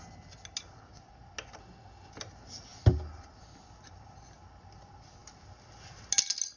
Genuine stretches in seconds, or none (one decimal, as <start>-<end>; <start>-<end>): 0.0-1.6; 2.1-6.6